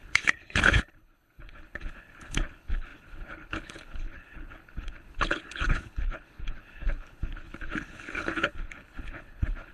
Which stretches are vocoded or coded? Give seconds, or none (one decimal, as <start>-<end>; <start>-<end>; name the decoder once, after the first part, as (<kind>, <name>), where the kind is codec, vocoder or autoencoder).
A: 0.0-9.7 (codec, HILCodec)

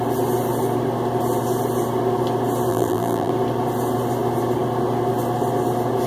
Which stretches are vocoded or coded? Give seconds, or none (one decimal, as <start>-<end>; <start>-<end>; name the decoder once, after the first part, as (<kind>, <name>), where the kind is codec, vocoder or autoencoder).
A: 2.7-3.3 (vocoder, BigVGAN v2)

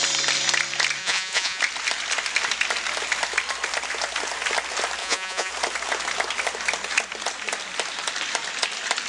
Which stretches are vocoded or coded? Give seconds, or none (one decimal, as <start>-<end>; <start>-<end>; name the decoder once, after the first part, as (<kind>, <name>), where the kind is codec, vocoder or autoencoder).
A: 1.0-1.6 (vocoder, Vocos); 5.0-5.5